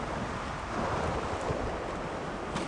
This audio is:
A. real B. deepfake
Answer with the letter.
A